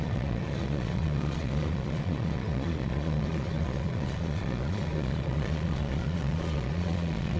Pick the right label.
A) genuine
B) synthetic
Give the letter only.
B